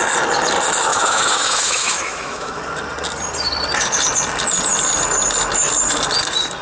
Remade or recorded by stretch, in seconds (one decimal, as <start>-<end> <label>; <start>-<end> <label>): 0.0-0.9 recorded; 0.9-2.6 remade; 2.6-6.6 recorded